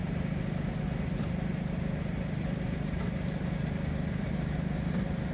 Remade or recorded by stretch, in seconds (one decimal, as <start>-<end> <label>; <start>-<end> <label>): 0.0-5.3 recorded

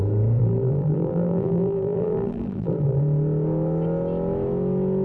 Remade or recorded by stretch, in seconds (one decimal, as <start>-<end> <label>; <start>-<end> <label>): 0.0-0.4 recorded; 0.4-3.0 remade; 3.0-5.0 recorded

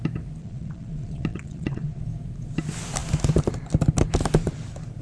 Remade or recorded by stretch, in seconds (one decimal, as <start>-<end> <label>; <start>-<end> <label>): 0.0-0.4 recorded; 0.4-2.0 remade; 2.0-5.0 recorded

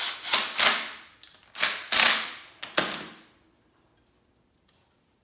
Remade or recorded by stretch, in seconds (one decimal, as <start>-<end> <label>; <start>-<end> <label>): 0.0-5.2 recorded

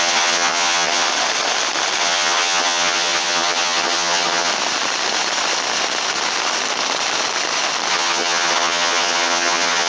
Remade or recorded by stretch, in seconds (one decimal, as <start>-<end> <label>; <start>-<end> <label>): 0.0-1.1 remade; 1.1-2.0 recorded; 2.0-4.5 remade; 4.5-7.9 recorded; 7.9-9.9 remade

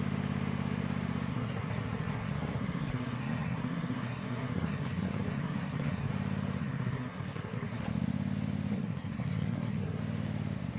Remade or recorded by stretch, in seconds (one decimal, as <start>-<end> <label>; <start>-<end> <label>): 0.0-1.3 recorded; 1.3-6.1 remade; 6.1-6.6 recorded; 6.6-7.8 remade; 7.8-8.7 recorded; 8.7-10.0 remade; 10.0-10.8 recorded

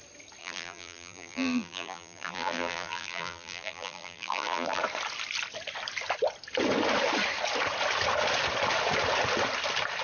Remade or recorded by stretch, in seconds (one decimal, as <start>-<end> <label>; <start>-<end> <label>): 0.0-0.4 recorded; 0.4-4.8 remade; 4.8-10.0 recorded